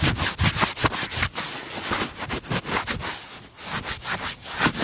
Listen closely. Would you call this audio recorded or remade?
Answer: recorded